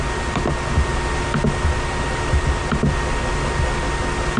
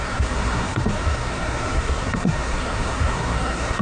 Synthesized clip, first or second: second